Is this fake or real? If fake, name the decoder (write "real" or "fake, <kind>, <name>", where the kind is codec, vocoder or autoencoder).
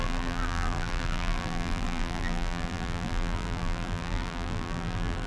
fake, vocoder, BigVGAN v2